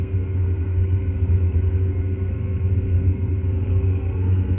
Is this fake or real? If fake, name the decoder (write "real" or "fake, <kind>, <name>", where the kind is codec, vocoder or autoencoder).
fake, codec, SNAC